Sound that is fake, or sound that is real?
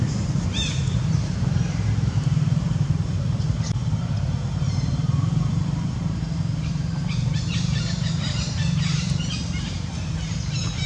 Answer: fake